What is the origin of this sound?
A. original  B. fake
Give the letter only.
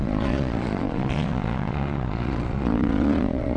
B